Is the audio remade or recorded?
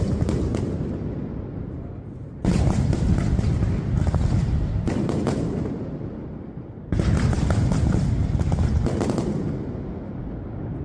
recorded